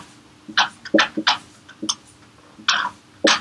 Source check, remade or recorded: recorded